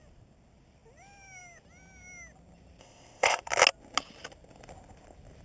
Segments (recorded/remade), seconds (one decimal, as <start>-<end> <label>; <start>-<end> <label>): 0.0-2.8 recorded; 2.8-3.4 remade; 3.4-5.4 recorded

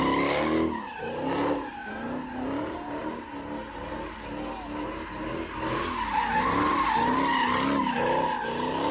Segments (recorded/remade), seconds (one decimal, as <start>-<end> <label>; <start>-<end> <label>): 0.0-1.8 recorded; 1.8-3.2 remade; 3.2-8.9 recorded

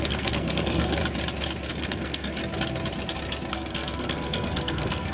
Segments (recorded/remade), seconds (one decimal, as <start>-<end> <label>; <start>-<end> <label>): 0.0-1.0 remade; 1.0-1.7 recorded; 1.7-2.4 remade; 2.4-3.5 recorded; 3.5-5.1 remade

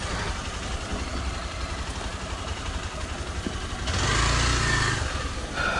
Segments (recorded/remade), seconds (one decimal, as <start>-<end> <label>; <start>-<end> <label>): 0.0-2.5 recorded; 2.5-3.0 remade; 3.0-5.8 recorded